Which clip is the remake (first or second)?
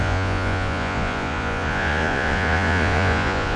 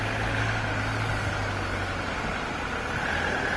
first